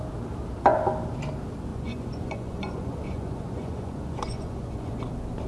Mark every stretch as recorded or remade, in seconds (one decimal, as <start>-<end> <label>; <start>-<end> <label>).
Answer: 0.0-1.7 recorded; 1.7-5.0 remade; 5.0-5.5 recorded